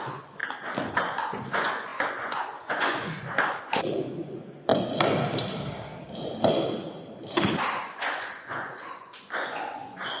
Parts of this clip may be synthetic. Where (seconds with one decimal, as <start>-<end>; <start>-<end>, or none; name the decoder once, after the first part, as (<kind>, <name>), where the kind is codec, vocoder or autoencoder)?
0.0-0.4 (vocoder, Vocos); 0.9-4.7; 7.8-10.2